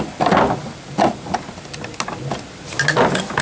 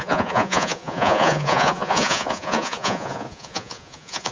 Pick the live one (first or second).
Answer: first